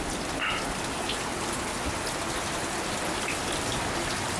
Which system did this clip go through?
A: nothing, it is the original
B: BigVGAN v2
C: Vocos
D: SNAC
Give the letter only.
A